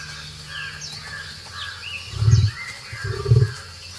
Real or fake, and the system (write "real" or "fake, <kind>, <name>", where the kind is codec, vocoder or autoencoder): real